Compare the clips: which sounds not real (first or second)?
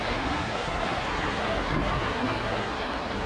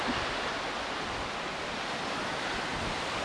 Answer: first